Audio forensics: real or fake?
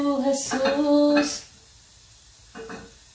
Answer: real